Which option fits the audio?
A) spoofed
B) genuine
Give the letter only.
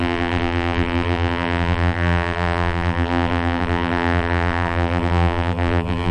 A